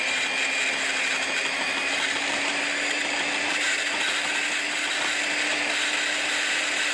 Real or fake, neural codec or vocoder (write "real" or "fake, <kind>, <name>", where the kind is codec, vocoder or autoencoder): fake, vocoder, BigVGAN v2